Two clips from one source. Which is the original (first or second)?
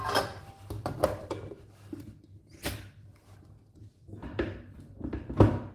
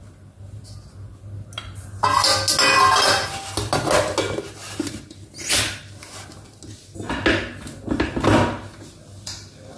second